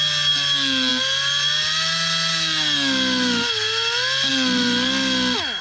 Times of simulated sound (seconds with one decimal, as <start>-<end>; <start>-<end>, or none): none